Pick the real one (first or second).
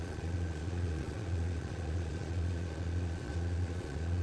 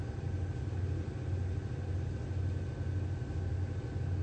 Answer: second